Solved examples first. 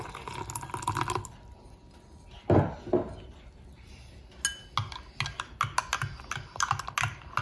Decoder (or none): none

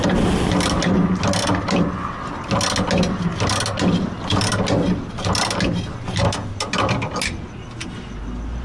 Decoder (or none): none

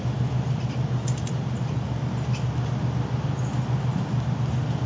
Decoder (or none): none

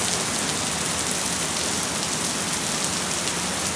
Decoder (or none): none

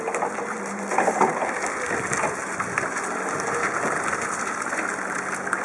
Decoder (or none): none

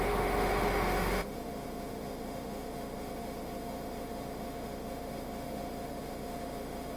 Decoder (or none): autoencoder, DAC-VAE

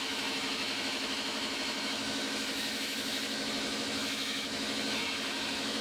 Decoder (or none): autoencoder, DAC-VAE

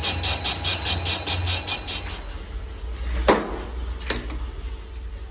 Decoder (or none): none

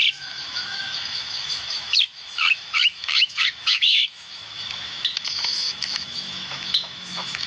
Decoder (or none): autoencoder, DAC-VAE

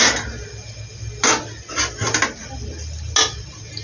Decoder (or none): none